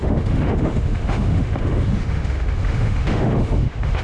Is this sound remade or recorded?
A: remade